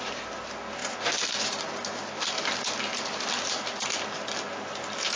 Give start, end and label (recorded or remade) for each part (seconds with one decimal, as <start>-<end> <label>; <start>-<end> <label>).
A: 0.0-5.2 recorded